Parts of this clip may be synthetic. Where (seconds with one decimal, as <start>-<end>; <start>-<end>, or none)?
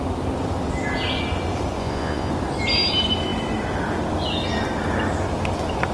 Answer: 1.8-2.3